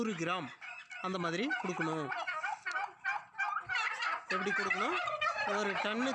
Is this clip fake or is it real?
real